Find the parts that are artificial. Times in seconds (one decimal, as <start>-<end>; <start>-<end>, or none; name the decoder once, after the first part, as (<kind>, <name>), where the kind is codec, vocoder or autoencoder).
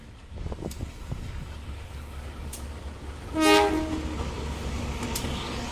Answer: 0.0-2.5 (codec, DAC); 5.2-5.7